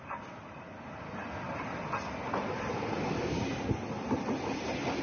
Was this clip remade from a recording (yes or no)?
no